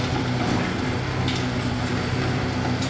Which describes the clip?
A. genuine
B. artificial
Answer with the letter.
B